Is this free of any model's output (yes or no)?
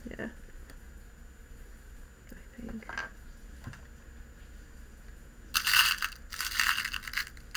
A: yes